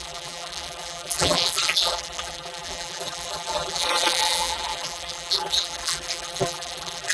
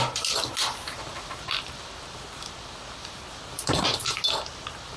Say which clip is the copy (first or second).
first